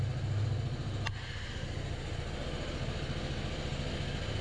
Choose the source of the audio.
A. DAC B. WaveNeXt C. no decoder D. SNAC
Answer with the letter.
C